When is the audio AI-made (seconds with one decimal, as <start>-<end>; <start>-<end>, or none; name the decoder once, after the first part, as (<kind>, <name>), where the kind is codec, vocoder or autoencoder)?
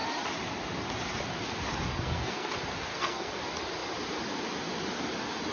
1.9-2.5 (codec, SNAC); 2.9-3.4